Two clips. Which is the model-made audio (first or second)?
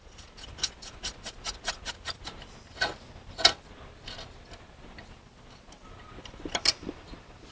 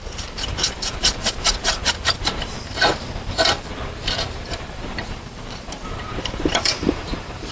second